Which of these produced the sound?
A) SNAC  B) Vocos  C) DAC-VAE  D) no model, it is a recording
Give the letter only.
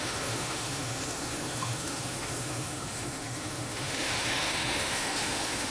C